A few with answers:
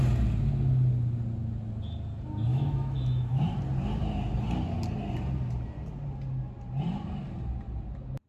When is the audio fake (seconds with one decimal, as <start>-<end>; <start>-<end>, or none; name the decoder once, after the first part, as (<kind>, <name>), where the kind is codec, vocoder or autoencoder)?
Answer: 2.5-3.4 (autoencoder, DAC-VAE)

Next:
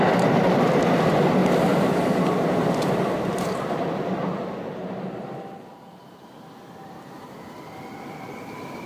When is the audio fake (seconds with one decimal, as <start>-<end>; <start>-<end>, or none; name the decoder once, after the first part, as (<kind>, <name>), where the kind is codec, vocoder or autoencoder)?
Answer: none

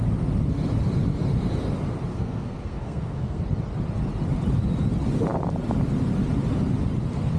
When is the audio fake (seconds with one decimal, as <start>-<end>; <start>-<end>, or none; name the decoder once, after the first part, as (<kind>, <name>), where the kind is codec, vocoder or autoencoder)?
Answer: 2.1-3.4 (codec, SNAC)